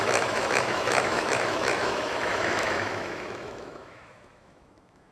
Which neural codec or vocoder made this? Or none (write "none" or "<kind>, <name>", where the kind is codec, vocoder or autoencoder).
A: autoencoder, DAC-VAE